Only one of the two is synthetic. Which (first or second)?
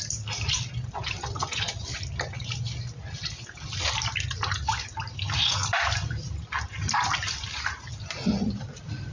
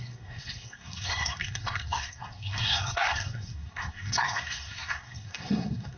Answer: second